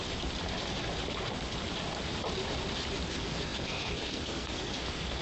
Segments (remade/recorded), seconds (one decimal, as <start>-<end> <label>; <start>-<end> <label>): 0.0-3.1 recorded; 3.1-5.2 remade